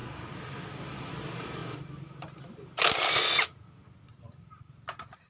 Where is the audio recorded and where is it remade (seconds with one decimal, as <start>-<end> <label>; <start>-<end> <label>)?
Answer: 0.0-1.0 recorded; 1.0-1.6 remade; 1.6-4.2 recorded; 4.2-5.3 remade